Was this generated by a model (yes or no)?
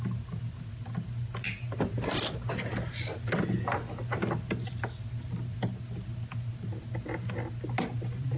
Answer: no